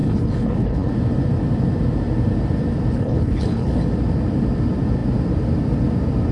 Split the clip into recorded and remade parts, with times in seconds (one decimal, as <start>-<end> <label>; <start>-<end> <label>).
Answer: 0.0-0.9 remade; 0.9-2.9 recorded; 2.9-3.8 remade; 3.8-6.3 recorded